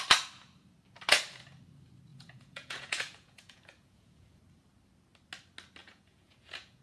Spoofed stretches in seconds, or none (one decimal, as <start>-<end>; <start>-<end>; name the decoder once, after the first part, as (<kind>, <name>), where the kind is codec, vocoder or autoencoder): 2.1-4.4 (vocoder, Vocos); 5.8-6.8